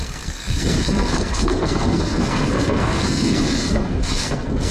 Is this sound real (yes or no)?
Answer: no